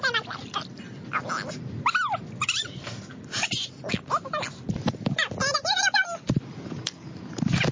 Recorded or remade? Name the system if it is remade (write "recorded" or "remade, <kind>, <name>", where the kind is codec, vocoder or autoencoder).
recorded